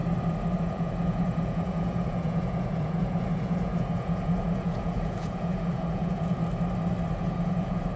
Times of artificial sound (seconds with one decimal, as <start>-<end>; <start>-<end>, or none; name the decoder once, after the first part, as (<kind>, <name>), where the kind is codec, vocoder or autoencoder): 0.6-6.4 (vocoder, Vocos); 7.2-8.0